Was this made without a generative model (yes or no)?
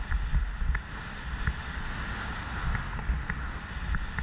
yes